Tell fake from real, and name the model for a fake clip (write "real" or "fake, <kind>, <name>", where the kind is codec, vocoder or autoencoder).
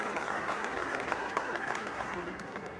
fake, codec, SNAC